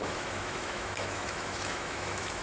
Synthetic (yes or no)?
yes